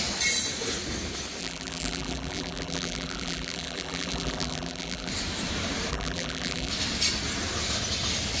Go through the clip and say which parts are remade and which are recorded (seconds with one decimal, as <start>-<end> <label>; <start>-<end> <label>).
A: 0.0-1.4 recorded; 1.4-5.1 remade; 5.1-5.9 recorded; 5.9-6.7 remade; 6.7-8.4 recorded